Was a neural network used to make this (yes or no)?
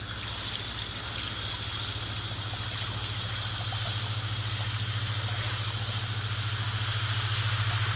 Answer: no